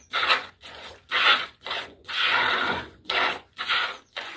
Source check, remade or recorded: remade